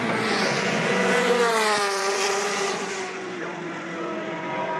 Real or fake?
fake